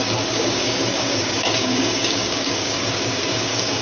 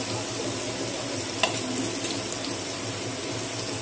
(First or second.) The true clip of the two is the second